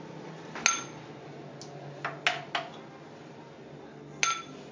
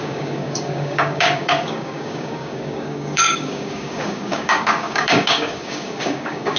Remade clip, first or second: second